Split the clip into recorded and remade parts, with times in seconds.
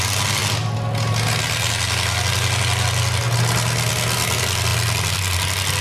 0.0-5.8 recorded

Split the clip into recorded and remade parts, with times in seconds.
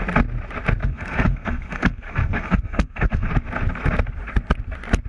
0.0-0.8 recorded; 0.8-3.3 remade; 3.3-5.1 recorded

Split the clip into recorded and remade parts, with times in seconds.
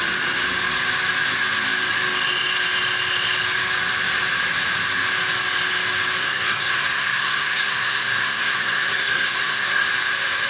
0.0-6.2 recorded; 6.2-9.9 remade; 9.9-10.5 recorded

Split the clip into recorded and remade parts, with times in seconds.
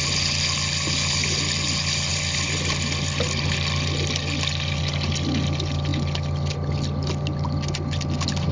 0.0-2.1 recorded; 2.1-4.8 remade; 4.8-8.5 recorded